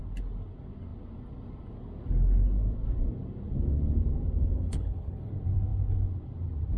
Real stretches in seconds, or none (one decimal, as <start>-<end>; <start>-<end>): 0.0-4.4; 5.3-6.8